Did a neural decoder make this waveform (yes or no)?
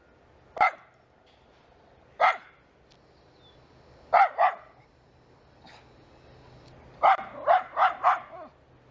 no